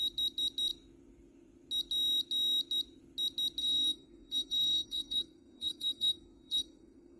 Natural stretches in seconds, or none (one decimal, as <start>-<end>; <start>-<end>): 0.0-3.6

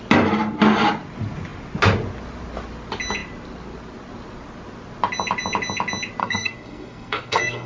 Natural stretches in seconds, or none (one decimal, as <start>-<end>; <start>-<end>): 0.0-6.2

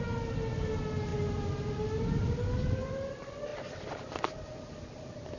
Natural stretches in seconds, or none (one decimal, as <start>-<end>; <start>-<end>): 0.0-5.4

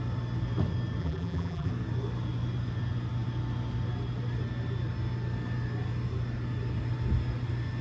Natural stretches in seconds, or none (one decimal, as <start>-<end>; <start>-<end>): 0.0-1.0; 1.7-7.8

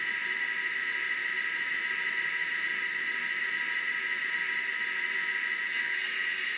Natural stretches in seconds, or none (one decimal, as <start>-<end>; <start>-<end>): 5.2-6.6